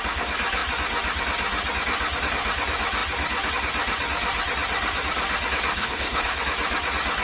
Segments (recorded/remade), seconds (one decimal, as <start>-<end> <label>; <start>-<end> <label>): 0.0-5.7 recorded; 5.7-6.4 remade; 6.4-7.2 recorded